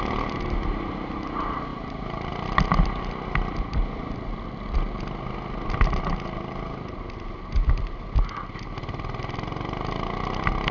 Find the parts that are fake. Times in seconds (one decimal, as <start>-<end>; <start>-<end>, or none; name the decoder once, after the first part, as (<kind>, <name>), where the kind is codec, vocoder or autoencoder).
1.7-2.3 (vocoder, BigVGAN v2)